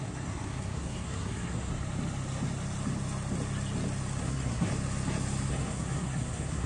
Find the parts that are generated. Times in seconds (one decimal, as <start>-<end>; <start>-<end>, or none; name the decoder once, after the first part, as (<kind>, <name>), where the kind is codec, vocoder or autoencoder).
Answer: 0.0-1.7 (codec, SNAC); 4.2-4.7; 5.5-6.7